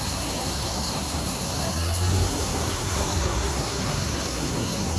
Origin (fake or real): fake